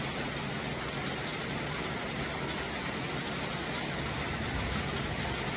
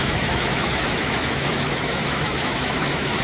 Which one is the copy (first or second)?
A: second